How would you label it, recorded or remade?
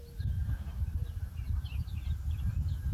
remade